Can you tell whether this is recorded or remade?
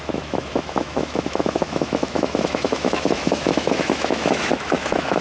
remade